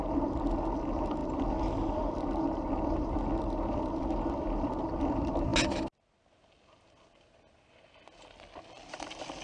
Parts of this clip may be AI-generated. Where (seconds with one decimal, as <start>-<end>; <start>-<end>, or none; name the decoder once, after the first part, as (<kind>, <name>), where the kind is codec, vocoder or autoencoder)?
none